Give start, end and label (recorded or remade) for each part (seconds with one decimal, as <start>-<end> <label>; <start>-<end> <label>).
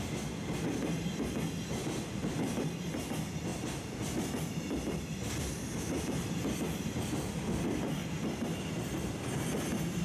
0.0-10.0 recorded